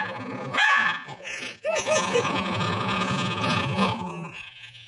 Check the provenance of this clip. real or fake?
fake